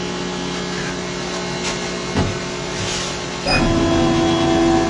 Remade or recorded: recorded